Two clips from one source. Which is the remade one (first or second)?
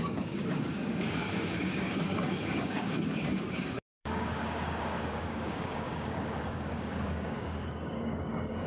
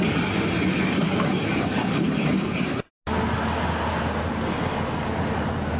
first